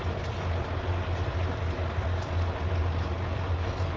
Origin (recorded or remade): recorded